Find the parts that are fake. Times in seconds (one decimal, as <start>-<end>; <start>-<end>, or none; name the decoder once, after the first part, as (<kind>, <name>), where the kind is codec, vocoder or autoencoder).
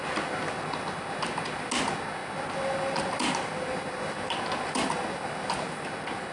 2.2-5.6 (vocoder, BigVGAN v2)